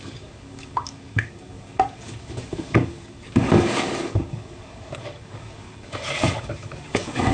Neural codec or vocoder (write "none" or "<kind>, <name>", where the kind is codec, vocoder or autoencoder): codec, DAC